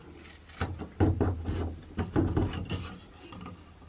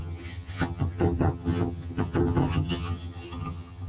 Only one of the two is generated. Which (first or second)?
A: second